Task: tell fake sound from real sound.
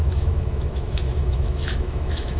fake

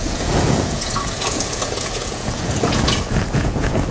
fake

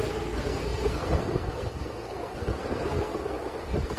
fake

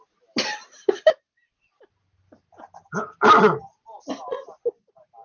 fake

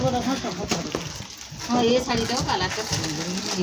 real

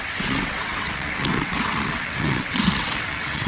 fake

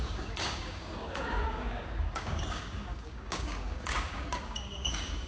fake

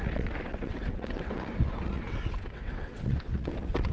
fake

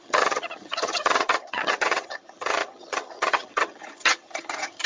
fake